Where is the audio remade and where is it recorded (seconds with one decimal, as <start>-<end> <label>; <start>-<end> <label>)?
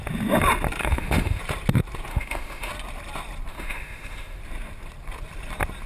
0.0-0.8 recorded; 0.8-1.4 remade; 1.4-2.1 recorded; 2.1-2.7 remade; 2.7-3.5 recorded; 3.5-4.4 remade; 4.4-5.9 recorded